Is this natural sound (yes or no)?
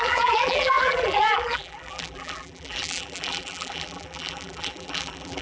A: no